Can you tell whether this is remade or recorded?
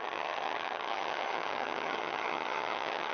remade